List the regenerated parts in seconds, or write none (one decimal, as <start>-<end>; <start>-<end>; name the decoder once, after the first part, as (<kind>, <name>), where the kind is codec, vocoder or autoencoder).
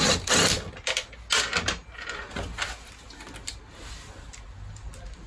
none